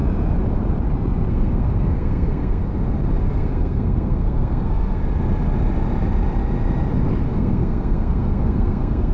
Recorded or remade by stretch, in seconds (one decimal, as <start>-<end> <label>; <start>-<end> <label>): 0.0-1.3 recorded; 1.3-2.6 remade; 2.6-3.2 recorded; 3.2-5.0 remade; 5.0-7.2 recorded; 7.2-9.1 remade

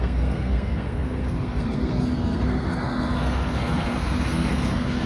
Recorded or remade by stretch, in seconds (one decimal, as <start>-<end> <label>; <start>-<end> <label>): 0.0-5.1 remade

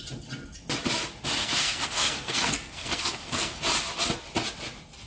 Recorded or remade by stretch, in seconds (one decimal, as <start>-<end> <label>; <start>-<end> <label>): 0.0-1.4 recorded; 1.4-3.6 remade; 3.6-5.1 recorded

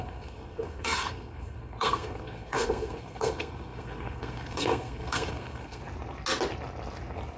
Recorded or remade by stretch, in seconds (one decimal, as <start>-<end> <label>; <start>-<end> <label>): 0.0-5.8 remade; 5.8-7.4 recorded

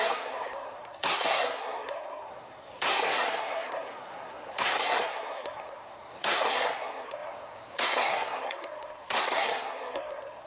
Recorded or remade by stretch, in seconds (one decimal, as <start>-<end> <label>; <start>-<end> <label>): 0.0-10.5 remade